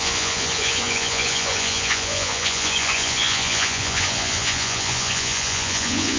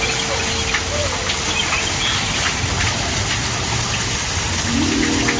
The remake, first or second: first